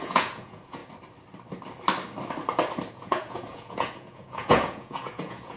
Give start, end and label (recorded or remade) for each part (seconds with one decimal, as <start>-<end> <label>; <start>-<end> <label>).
0.0-0.8 remade; 0.8-2.9 recorded; 2.9-5.6 remade